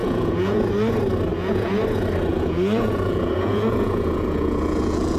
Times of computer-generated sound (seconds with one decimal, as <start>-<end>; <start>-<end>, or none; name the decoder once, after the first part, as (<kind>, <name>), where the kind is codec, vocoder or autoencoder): 0.0-0.7 (vocoder, Vocos); 1.3-1.8; 2.3-5.2